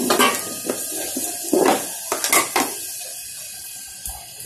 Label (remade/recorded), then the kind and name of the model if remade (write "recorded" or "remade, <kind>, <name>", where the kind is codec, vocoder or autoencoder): recorded